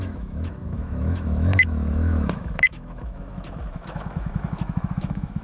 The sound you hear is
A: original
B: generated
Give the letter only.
B